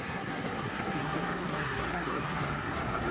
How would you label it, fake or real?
fake